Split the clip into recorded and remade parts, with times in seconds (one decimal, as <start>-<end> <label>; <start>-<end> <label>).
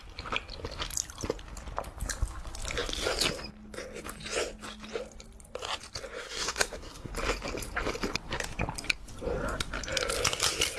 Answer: 0.0-6.2 recorded; 6.2-7.1 remade; 7.1-10.8 recorded